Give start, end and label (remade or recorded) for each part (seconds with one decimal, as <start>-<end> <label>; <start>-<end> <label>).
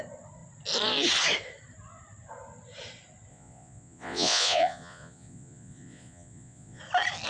0.0-3.3 recorded; 3.3-6.8 remade; 6.8-7.3 recorded